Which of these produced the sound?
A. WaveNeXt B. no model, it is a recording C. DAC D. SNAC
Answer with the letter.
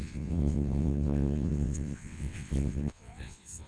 A